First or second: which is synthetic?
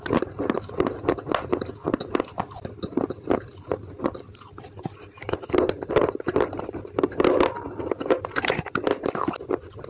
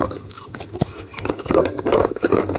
second